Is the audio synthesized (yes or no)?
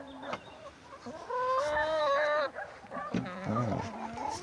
no